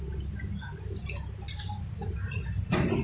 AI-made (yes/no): no